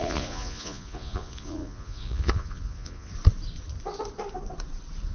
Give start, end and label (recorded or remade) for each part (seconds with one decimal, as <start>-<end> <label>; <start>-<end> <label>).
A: 0.0-3.1 remade; 3.1-5.1 recorded